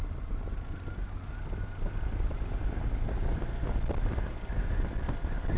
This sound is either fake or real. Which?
real